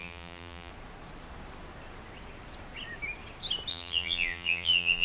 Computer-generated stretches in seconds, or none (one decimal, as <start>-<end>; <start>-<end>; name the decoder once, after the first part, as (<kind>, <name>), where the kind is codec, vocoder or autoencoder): 0.0-0.7 (vocoder, BigVGAN v2); 3.7-5.0